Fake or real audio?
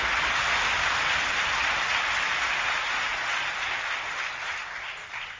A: real